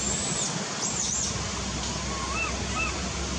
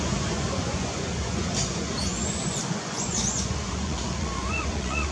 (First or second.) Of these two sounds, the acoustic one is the first